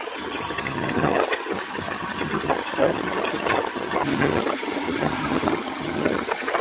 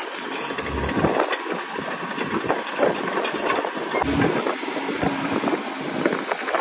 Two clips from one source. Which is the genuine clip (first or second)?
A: second